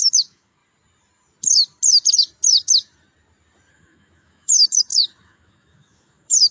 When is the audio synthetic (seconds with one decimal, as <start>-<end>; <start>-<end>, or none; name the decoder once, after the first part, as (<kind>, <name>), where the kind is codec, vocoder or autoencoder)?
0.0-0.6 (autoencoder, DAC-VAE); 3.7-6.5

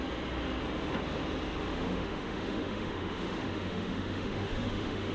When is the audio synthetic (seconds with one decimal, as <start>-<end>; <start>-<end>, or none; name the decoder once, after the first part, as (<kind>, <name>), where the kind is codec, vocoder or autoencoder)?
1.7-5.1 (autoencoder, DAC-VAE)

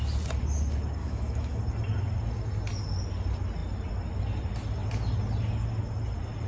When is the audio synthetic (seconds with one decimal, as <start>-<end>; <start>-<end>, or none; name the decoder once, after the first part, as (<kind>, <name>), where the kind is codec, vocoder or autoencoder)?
1.0-1.6 (autoencoder, DAC-VAE)

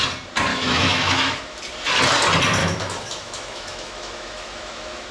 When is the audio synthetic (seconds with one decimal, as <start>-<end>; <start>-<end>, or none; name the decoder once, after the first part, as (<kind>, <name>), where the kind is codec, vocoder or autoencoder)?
0.5-1.6 (autoencoder, DAC-VAE); 2.6-5.1

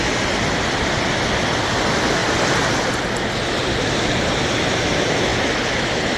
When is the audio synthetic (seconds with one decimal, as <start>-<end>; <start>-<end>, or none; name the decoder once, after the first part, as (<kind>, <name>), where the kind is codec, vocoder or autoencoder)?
none